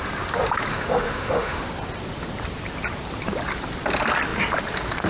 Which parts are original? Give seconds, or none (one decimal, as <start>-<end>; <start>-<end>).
0.0-0.7; 1.6-5.1

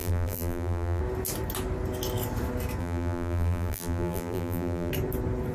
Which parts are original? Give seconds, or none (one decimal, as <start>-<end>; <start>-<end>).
1.0-2.8; 4.9-5.5